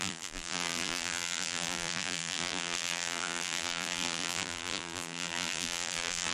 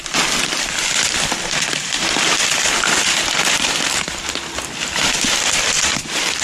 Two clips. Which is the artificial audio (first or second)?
first